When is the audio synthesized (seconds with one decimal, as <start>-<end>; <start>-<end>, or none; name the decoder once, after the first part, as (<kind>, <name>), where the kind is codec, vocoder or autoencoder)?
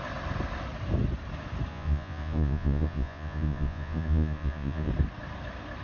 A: 1.7-4.9 (vocoder, Vocos)